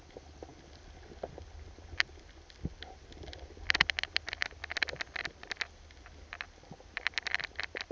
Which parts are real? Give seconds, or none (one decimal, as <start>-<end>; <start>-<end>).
0.0-7.9